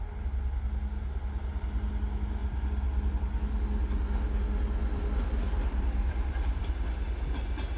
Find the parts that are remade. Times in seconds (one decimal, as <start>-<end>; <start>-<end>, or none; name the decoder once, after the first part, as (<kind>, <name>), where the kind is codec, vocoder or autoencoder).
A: 2.4-3.1 (vocoder, BigVGAN v2); 4.8-6.7